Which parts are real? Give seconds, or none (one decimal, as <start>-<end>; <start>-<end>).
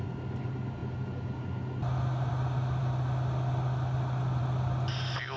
0.0-5.4